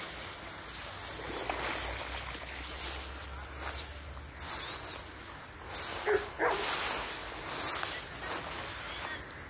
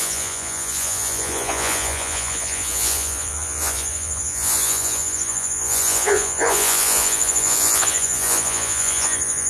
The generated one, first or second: second